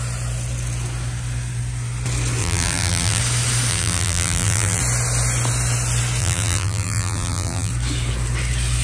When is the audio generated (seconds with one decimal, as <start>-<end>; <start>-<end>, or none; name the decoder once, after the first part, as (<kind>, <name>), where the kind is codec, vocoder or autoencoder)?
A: 2.4-3.2 (vocoder, BigVGAN v2); 3.7-4.8; 6.2-7.7